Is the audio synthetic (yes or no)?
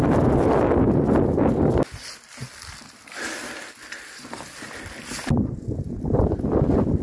no